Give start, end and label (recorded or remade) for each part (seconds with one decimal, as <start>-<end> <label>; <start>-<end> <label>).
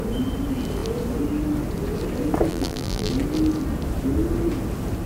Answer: 0.0-2.5 recorded; 2.5-3.1 remade; 3.1-5.1 recorded